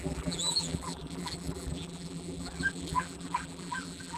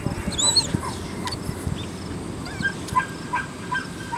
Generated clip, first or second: first